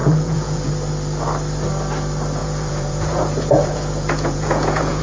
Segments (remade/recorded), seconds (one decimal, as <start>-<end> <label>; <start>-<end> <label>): 0.0-0.7 remade; 0.7-2.4 recorded; 2.4-5.0 remade